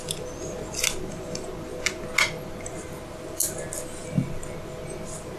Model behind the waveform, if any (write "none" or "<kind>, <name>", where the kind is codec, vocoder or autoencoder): none